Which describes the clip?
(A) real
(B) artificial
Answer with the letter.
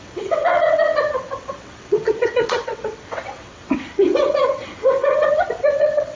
B